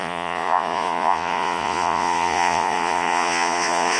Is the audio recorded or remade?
remade